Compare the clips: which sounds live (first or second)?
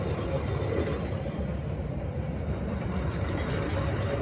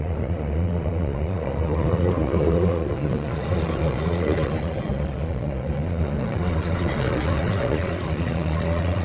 first